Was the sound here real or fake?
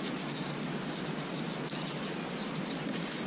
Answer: real